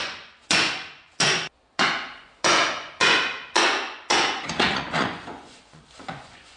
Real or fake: fake